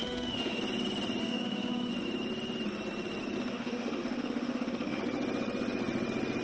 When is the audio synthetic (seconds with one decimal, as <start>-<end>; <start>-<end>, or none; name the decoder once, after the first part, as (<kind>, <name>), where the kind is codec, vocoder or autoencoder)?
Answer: 0.0-0.6 (autoencoder, DAC-VAE); 1.2-1.9; 3.5-5.0